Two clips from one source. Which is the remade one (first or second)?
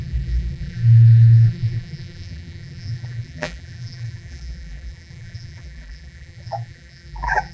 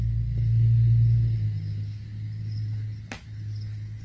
first